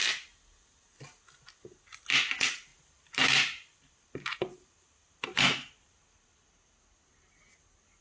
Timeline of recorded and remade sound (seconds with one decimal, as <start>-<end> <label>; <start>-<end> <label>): 0.0-2.7 recorded; 2.7-6.4 remade; 6.4-8.0 recorded